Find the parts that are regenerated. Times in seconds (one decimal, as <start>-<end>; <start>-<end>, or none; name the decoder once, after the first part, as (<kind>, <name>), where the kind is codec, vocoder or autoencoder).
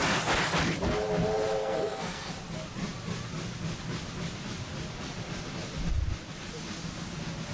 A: 1.6-2.3 (codec, SNAC)